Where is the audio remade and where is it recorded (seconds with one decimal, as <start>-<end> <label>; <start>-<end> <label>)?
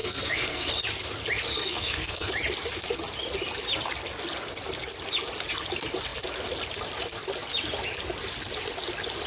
0.0-0.7 remade; 0.7-1.6 recorded; 1.6-2.3 remade; 2.3-9.3 recorded